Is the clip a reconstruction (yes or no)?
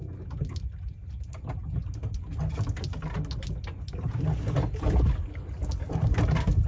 no